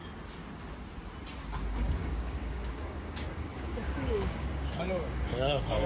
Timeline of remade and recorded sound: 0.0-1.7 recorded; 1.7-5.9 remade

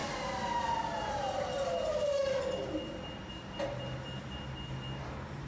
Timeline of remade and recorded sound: 0.0-5.5 recorded

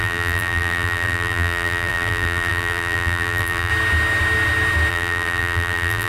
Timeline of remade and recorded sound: 0.0-3.7 remade; 3.7-4.9 recorded; 4.9-6.1 remade